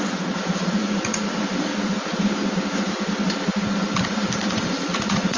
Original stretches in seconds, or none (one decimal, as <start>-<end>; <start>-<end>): 1.7-4.5

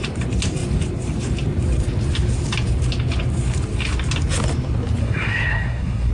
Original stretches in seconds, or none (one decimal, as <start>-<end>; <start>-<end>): 0.0-5.0

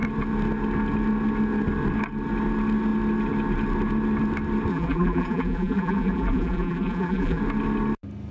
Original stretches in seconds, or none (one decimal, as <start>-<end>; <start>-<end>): 0.0-4.7; 7.4-8.3

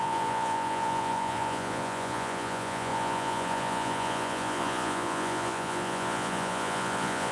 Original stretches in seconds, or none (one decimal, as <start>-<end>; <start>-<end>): none

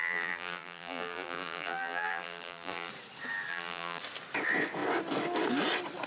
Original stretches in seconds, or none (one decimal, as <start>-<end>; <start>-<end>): 2.9-3.5; 4.0-6.1

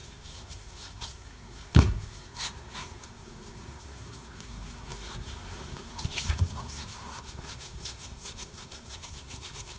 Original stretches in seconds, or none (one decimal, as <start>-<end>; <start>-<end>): none

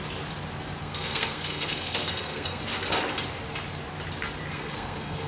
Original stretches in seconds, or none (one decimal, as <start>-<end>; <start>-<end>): 0.0-0.8; 2.6-4.5

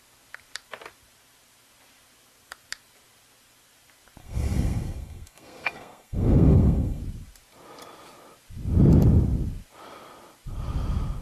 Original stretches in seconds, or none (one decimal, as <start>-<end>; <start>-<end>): 0.0-4.2; 7.0-11.2